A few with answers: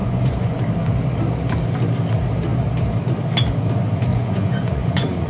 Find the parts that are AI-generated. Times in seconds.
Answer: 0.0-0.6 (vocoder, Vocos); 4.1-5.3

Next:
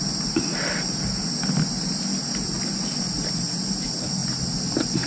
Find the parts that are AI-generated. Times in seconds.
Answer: none

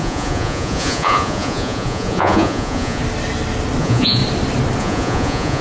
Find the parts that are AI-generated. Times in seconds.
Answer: 0.0-3.0 (vocoder, Vocos); 3.8-4.2; 4.8-5.6

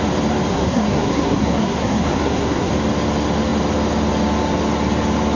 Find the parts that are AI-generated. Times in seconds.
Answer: 0.5-2.7 (codec, SNAC)